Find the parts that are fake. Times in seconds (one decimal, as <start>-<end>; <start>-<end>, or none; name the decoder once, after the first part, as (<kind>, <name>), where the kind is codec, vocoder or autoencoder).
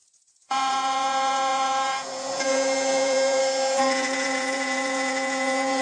0.0-5.8 (vocoder, Vocos)